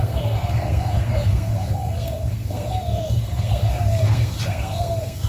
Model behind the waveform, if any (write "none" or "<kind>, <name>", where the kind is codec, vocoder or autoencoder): codec, SNAC